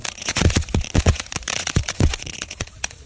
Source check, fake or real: fake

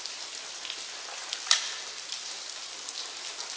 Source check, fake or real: real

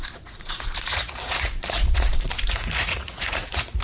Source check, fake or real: fake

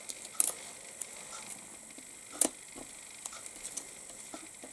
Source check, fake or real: real